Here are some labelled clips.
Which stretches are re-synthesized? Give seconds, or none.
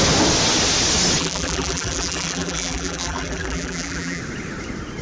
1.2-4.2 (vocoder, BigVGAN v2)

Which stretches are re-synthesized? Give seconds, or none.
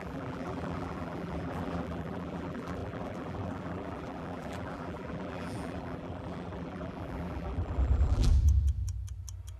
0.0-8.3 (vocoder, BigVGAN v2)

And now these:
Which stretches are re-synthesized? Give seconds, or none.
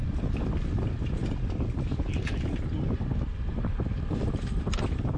0.0-1.2 (vocoder, BigVGAN v2); 4.3-5.2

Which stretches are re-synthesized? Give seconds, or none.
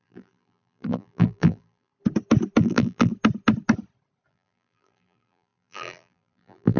0.0-1.9 (vocoder, BigVGAN v2); 2.6-3.1; 4.3-6.8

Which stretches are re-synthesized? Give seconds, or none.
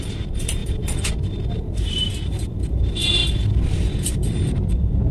0.0-3.2 (vocoder, BigVGAN v2); 4.1-5.1